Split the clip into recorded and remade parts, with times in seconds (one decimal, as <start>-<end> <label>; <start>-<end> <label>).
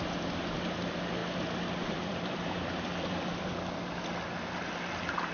0.0-1.2 recorded; 1.2-4.0 remade; 4.0-5.3 recorded